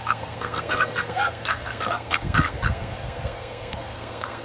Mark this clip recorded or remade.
remade